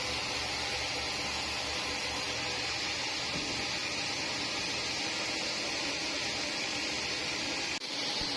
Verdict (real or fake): real